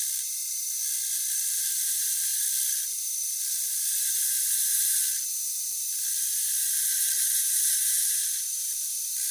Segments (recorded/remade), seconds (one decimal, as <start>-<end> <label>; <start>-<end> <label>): 0.0-6.4 remade; 6.4-8.1 recorded; 8.1-9.3 remade